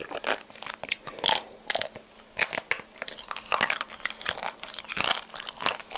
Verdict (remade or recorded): recorded